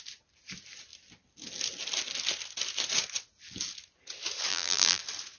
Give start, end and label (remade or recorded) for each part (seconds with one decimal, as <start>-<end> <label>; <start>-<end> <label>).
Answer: 0.0-4.5 recorded; 4.5-5.0 remade; 5.0-5.4 recorded